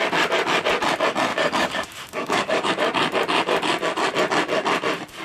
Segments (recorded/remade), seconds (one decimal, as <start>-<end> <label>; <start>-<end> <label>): 0.0-1.3 recorded; 1.3-2.7 remade; 2.7-5.2 recorded